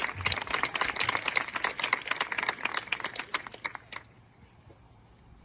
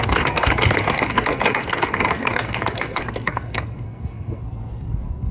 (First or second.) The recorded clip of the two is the first